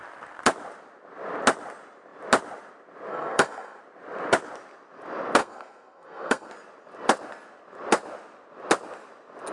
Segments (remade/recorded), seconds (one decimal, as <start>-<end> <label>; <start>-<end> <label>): 0.0-3.1 recorded; 3.1-3.8 remade; 3.8-5.4 recorded; 5.4-6.5 remade; 6.5-9.5 recorded

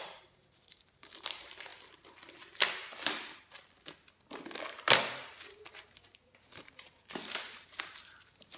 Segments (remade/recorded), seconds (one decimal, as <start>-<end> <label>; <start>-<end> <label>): 0.0-1.7 remade; 1.7-5.1 recorded; 5.1-8.6 remade

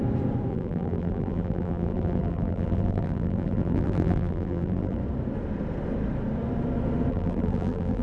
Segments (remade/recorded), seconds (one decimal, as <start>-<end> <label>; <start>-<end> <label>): 0.0-0.5 recorded; 0.5-5.0 remade; 5.0-7.1 recorded; 7.1-8.0 remade